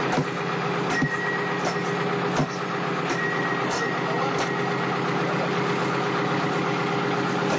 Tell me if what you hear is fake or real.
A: real